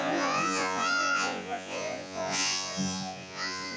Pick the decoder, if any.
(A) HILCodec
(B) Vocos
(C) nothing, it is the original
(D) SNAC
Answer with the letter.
B